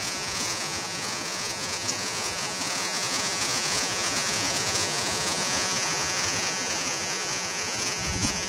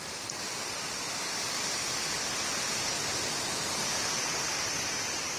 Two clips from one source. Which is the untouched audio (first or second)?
second